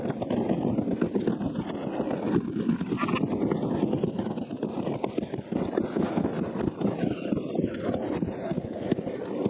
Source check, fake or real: real